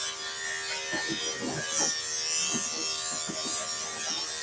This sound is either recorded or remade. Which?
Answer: recorded